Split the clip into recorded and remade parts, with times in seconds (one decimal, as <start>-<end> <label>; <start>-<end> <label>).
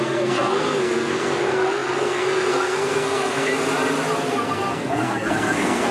0.0-3.5 remade; 3.5-4.3 recorded; 4.3-5.9 remade